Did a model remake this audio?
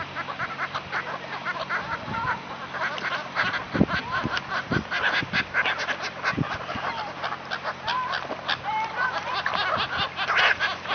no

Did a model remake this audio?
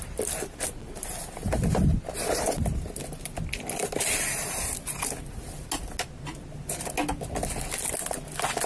no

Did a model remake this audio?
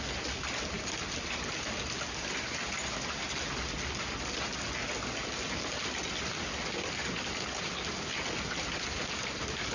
no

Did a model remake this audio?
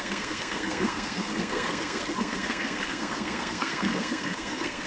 yes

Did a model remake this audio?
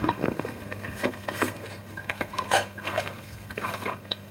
yes